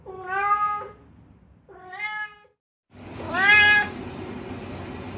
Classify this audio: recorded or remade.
recorded